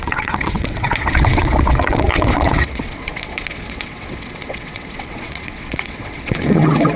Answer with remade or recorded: remade